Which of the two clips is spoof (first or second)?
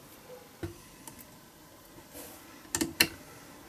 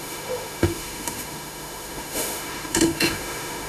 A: second